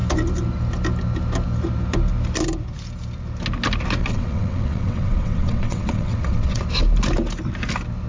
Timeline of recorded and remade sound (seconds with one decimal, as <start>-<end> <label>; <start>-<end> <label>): 0.0-4.0 recorded; 4.0-6.6 remade; 6.6-8.1 recorded